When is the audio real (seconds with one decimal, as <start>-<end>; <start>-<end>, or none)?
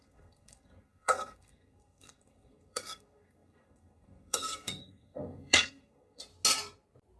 6.2-7.2